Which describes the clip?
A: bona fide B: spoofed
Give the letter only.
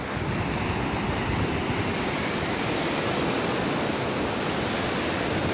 A